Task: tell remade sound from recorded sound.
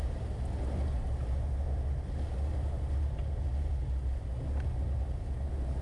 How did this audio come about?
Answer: recorded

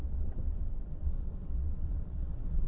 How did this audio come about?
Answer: remade